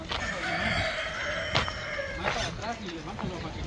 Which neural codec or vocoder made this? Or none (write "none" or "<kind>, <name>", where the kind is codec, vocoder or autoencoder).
none